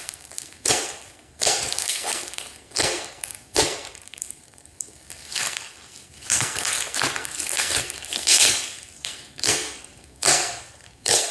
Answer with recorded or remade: remade